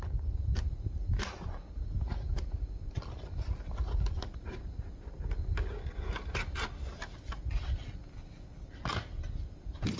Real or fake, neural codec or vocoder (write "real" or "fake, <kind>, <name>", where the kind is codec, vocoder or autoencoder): real